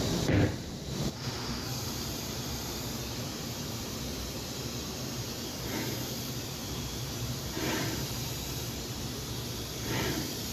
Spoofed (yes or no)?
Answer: yes